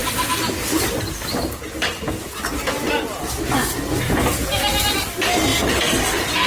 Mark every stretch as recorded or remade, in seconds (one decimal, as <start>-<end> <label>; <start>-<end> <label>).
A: 0.0-6.5 recorded